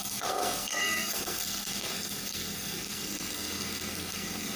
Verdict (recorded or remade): remade